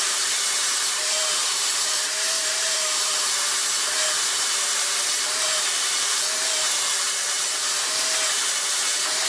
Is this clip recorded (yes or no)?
no